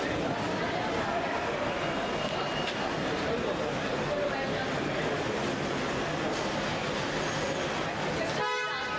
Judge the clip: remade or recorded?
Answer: recorded